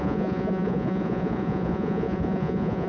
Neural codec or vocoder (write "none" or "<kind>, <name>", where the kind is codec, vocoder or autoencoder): vocoder, Vocos